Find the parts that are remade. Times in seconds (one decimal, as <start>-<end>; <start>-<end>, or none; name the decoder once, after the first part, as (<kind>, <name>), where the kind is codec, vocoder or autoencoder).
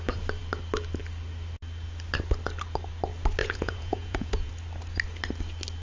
3.4-4.5 (vocoder, Vocos)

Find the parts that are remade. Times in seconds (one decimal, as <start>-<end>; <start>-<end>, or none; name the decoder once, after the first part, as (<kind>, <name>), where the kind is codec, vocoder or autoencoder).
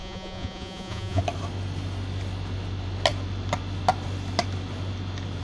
0.0-1.2 (vocoder, Vocos)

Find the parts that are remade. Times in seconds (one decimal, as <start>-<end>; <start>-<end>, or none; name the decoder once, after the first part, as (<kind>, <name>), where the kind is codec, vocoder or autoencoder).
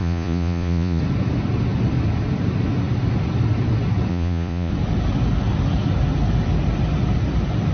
0.0-1.0 (vocoder, Vocos); 4.1-4.7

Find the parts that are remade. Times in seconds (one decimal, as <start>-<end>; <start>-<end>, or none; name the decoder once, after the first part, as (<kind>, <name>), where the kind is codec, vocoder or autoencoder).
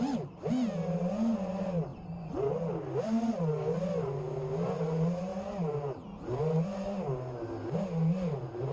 none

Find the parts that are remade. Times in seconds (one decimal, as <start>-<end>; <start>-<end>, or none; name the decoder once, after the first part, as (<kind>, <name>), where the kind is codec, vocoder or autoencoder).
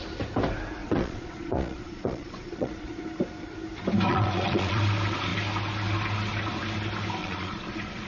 0.8-3.0 (vocoder, Vocos); 4.1-4.8; 7.2-8.1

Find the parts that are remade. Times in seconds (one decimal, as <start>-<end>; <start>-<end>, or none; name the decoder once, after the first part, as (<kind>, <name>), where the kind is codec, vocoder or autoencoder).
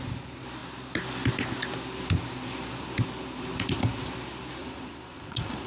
4.6-5.7 (vocoder, Vocos)